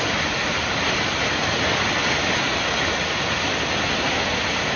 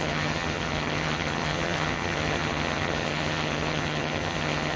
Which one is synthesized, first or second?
second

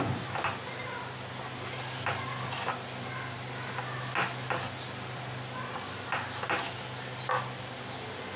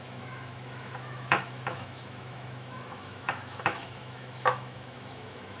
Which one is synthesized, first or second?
second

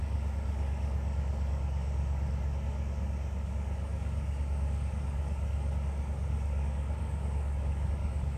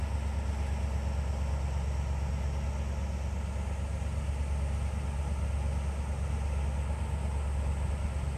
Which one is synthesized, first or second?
first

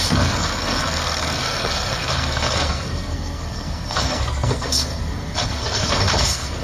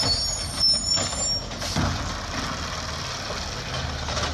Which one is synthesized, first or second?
first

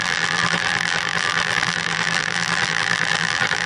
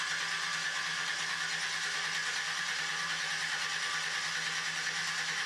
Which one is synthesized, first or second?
first